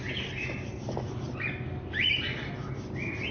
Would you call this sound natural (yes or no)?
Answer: yes